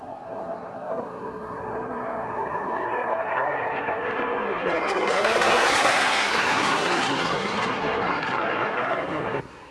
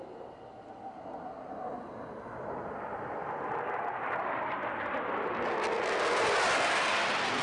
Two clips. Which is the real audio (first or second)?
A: second